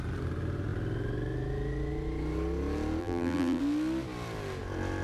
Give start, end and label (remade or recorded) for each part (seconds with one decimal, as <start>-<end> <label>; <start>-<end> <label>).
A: 0.0-3.0 recorded; 3.0-3.6 remade; 3.6-5.0 recorded